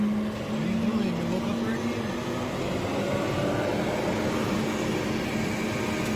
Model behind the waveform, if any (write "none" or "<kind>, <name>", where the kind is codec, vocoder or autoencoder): none